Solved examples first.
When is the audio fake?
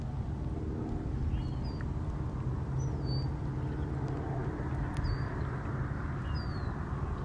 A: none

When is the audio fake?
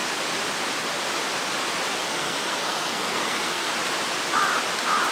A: 2.0-3.7 (codec, SNAC)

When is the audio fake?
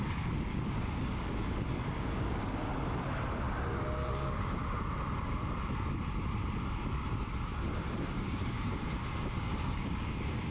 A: 0.0-2.7 (codec, DAC); 4.1-4.6; 8.0-10.5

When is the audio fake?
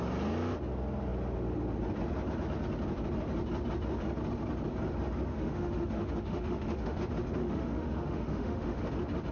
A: 5.3-7.0 (autoencoder, DAC-VAE); 7.4-8.9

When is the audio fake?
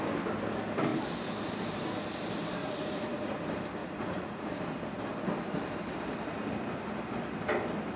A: 2.6-3.3 (vocoder, Vocos); 3.8-4.4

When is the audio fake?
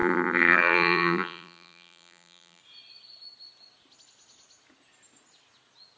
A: 0.0-2.6 (vocoder, BigVGAN v2)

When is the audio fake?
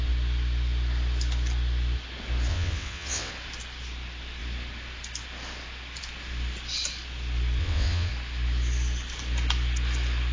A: 2.5-3.3 (vocoder, WaveNeXt); 7.6-8.1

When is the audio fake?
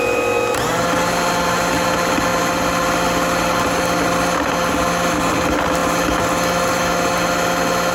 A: none